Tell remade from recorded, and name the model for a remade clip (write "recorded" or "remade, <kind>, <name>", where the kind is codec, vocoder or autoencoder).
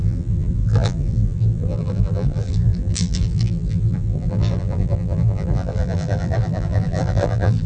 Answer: remade, vocoder, BigVGAN v2